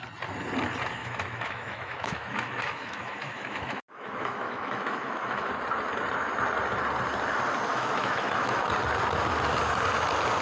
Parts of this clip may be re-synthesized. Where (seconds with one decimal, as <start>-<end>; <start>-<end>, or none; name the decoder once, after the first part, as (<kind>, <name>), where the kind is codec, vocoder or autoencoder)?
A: 1.0-5.5 (autoencoder, DAC-VAE); 7.7-8.7